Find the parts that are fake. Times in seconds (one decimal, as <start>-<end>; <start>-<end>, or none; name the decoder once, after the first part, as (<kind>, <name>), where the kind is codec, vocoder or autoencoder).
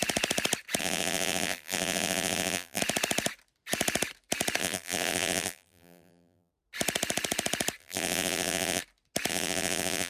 0.8-2.8 (vocoder, BigVGAN v2); 4.6-6.5; 7.8-8.8; 9.3-10.1